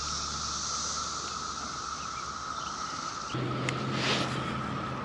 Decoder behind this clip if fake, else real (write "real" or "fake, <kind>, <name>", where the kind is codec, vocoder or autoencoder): real